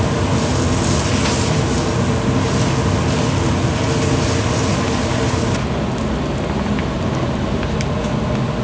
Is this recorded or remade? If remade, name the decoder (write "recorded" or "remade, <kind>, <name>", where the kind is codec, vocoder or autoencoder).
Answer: recorded